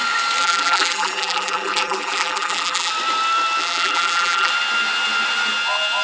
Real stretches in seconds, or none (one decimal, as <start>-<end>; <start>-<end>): 0.0-0.4; 2.9-3.6; 4.5-6.0